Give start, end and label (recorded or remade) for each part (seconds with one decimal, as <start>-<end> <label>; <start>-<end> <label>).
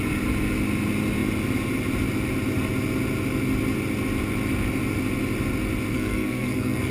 0.0-5.9 recorded; 5.9-6.9 remade